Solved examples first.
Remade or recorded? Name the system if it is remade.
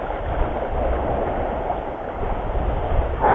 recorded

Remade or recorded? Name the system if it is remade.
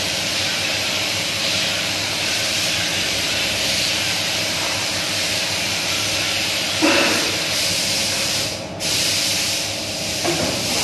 remade, vocoder, BigVGAN v2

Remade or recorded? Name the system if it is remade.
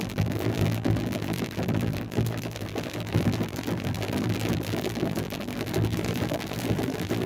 remade, vocoder, BigVGAN v2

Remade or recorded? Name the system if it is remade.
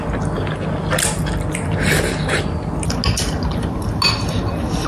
recorded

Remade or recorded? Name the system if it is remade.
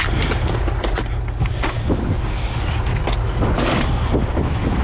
recorded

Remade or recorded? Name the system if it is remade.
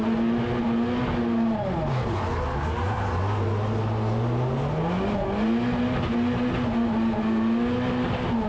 recorded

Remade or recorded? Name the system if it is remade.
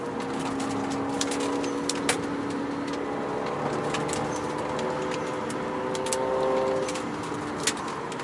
recorded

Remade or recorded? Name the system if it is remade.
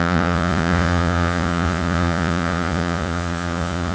remade, vocoder, Vocos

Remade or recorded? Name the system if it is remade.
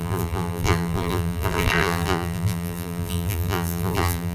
remade, vocoder, BigVGAN v2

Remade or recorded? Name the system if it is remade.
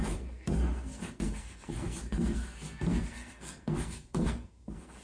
remade, codec, SNAC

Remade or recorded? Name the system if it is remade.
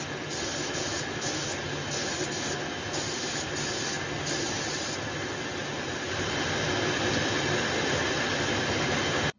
recorded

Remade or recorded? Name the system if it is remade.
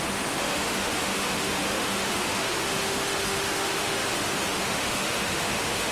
remade, autoencoder, DAC-VAE